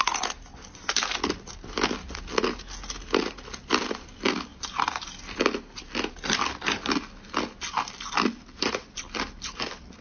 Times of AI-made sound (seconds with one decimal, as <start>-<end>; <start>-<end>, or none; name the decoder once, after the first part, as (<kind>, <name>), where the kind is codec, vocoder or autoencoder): none